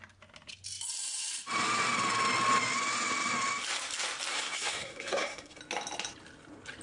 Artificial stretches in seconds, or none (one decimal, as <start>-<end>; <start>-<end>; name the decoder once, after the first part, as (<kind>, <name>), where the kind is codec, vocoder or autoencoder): 4.3-5.6 (codec, SNAC)